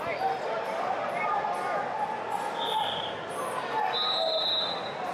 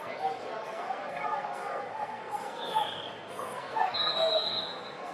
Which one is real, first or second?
first